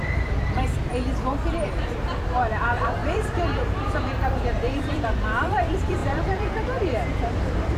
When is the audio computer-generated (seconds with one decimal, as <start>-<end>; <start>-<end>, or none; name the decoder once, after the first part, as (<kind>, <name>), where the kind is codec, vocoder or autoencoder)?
0.0-0.9 (vocoder, BigVGAN v2); 1.7-7.8